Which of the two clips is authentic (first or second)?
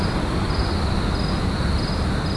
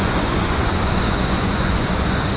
first